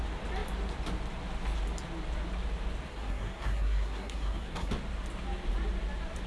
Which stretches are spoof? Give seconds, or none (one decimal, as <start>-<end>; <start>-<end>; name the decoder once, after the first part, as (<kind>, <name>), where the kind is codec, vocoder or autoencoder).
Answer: 2.9-4.7 (codec, SNAC)